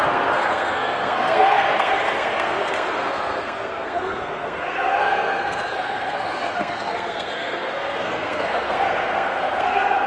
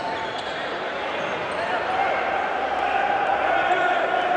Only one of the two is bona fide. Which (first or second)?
second